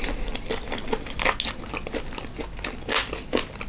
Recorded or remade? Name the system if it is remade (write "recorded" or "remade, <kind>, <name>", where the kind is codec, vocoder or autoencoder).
recorded